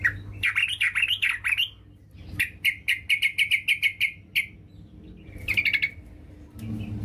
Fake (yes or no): no